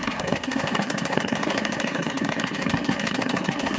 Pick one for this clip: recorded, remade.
remade